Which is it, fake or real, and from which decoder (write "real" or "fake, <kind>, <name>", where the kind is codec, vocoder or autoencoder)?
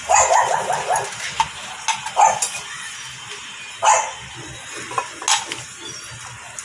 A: real